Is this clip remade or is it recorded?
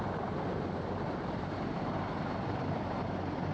remade